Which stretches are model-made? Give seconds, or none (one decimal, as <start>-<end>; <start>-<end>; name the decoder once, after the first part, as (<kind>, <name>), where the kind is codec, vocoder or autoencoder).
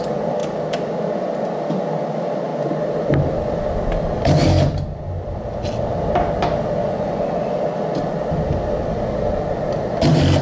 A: 6.8-7.5 (vocoder, Vocos)